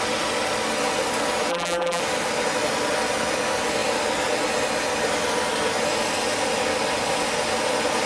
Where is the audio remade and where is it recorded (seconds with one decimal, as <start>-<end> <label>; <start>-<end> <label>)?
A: 0.0-1.5 recorded; 1.5-2.0 remade; 2.0-8.1 recorded